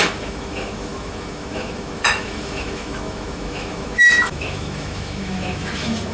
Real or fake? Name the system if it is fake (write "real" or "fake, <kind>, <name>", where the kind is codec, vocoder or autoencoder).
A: fake, autoencoder, DAC-VAE